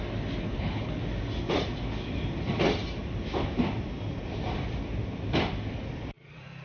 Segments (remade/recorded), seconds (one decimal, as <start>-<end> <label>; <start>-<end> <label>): 0.0-0.4 recorded; 0.4-0.9 remade; 0.9-6.6 recorded